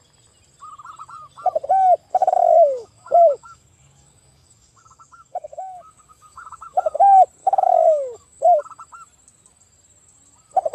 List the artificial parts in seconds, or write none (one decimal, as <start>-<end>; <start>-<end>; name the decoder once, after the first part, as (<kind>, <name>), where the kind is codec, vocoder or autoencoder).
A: 2.2-7.0 (codec, DAC); 7.4-8.6